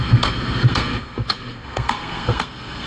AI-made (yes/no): yes